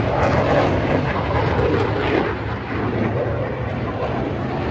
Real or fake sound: real